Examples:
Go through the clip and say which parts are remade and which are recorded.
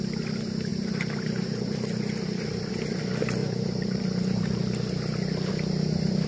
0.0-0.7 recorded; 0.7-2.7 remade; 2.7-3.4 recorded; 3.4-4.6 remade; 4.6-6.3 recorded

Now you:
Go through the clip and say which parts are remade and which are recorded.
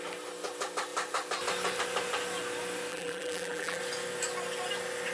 0.0-2.9 recorded; 2.9-3.8 remade; 3.8-5.1 recorded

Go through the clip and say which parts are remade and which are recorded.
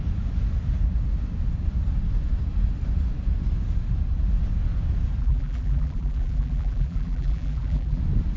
0.0-5.2 recorded; 5.2-8.0 remade; 8.0-8.4 recorded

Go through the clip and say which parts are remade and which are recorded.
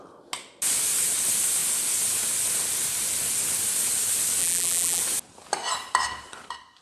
0.0-4.4 recorded; 4.4-5.0 remade; 5.0-6.8 recorded